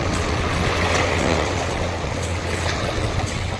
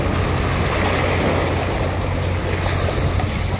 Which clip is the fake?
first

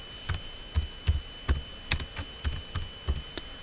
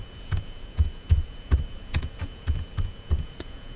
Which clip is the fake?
second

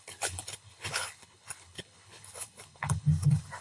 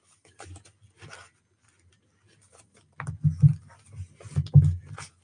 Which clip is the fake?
first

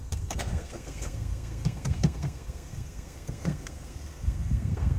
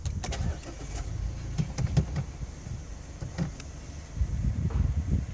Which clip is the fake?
first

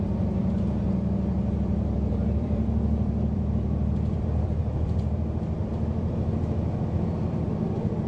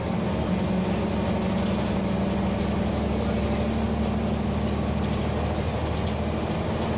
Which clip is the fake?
first